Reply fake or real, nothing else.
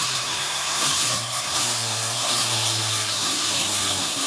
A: fake